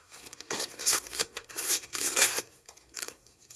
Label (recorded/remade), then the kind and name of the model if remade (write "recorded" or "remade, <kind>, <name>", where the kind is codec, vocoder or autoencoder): remade, codec, SNAC